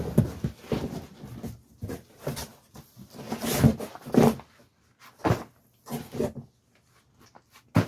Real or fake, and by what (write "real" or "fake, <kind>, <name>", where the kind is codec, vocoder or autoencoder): real